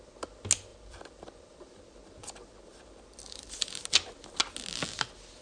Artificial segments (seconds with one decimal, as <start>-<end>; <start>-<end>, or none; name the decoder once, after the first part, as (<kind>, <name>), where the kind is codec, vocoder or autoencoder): 0.7-3.8 (vocoder, BigVGAN v2)